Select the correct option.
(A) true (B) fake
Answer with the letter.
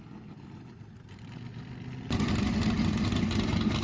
A